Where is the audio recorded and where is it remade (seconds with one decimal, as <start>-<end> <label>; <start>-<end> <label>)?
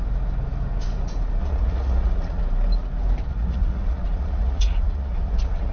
0.0-1.4 recorded; 1.4-2.4 remade; 2.4-3.3 recorded; 3.3-5.7 remade